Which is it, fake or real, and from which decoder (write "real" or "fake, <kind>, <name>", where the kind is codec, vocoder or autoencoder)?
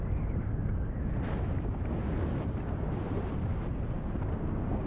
real